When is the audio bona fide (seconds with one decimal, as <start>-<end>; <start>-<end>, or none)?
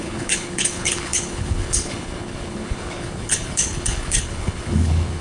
none